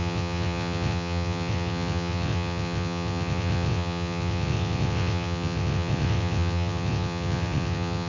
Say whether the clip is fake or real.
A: fake